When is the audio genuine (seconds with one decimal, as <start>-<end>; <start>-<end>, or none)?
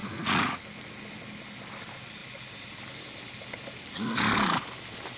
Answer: 0.6-5.2